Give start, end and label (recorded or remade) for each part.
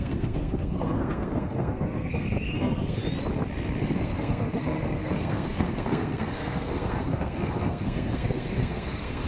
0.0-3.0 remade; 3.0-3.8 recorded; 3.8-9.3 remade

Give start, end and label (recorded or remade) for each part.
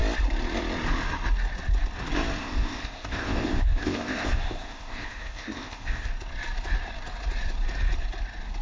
0.0-2.4 recorded; 2.4-6.1 remade; 6.1-8.6 recorded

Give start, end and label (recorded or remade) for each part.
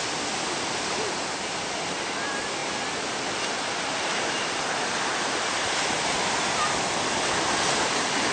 0.0-8.3 recorded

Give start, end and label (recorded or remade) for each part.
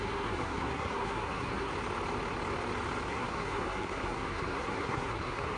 0.0-1.7 remade; 1.7-3.1 recorded; 3.1-5.6 remade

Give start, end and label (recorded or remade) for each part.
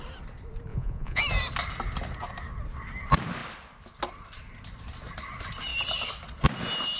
0.0-0.7 recorded; 0.7-1.2 remade; 1.2-7.0 recorded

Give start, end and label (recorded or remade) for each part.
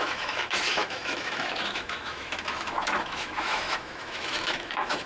0.0-5.1 remade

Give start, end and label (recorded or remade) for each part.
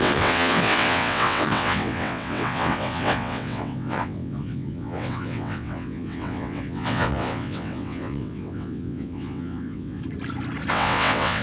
0.0-10.0 remade; 10.0-10.7 recorded; 10.7-11.4 remade